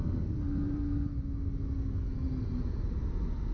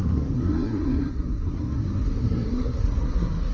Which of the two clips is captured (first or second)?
first